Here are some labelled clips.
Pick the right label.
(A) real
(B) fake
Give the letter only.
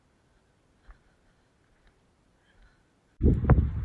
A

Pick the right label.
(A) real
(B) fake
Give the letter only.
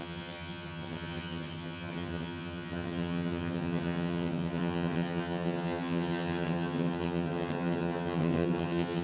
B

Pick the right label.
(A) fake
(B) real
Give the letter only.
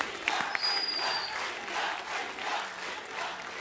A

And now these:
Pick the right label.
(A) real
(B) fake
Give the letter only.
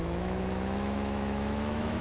B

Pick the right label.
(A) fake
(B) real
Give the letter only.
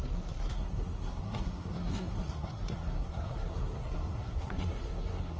A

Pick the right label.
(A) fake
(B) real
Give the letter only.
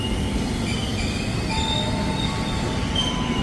B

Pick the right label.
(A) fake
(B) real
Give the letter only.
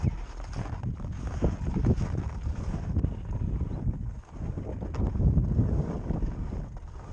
B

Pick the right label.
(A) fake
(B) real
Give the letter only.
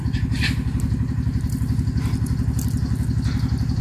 B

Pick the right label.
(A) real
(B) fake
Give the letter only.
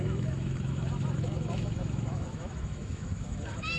B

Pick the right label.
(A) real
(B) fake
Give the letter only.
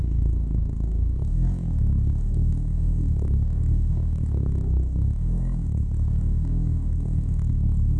B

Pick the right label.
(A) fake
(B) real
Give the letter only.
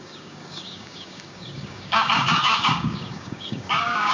A